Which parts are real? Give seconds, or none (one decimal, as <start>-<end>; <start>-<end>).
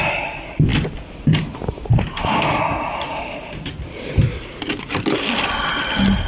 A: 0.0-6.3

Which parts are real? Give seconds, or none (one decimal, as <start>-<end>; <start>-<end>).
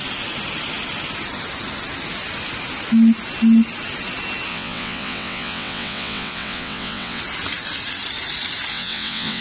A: 0.0-4.5; 7.2-8.7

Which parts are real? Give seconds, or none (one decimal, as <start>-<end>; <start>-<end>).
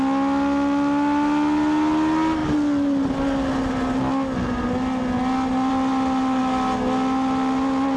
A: 0.0-8.0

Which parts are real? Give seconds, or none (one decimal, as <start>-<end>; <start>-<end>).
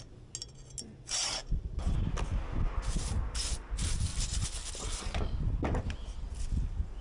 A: 0.0-7.0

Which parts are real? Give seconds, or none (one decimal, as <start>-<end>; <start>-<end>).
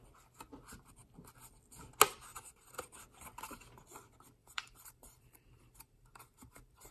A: 0.0-2.3; 3.0-4.4